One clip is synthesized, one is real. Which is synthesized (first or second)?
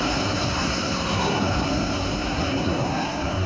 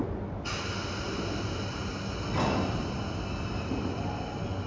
first